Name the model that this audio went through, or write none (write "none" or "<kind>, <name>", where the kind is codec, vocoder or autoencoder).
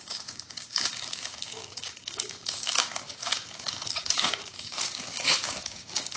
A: codec, DAC